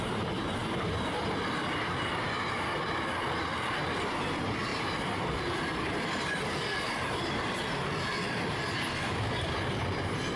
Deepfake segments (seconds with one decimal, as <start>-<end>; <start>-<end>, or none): 4.7-5.3